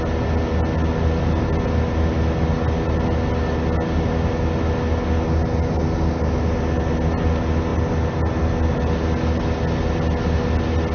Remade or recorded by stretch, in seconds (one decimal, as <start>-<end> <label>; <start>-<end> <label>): 0.0-10.9 recorded